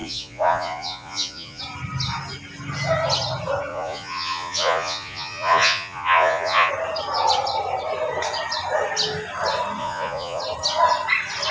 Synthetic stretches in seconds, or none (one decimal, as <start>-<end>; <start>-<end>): 0.0-1.6; 3.7-6.7; 9.8-10.4

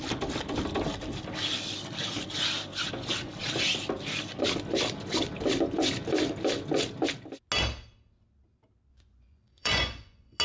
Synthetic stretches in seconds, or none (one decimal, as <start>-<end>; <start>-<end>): 8.9-10.4